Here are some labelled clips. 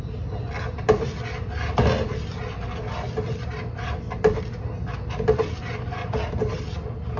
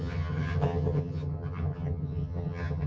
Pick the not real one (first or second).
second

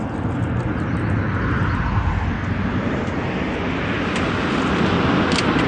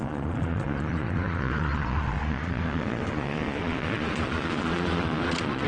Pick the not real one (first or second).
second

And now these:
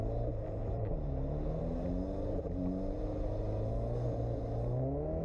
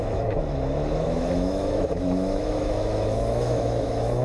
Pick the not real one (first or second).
second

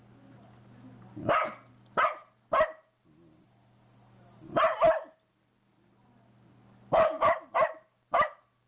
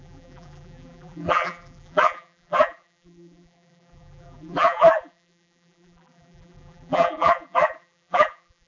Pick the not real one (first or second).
second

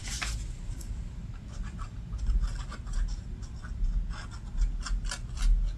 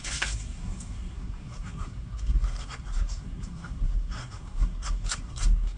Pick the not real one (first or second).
second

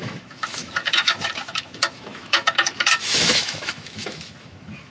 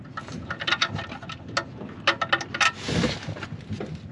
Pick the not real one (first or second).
first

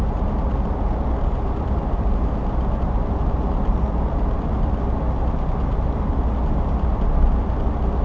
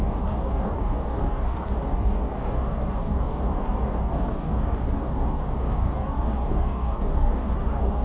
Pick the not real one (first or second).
second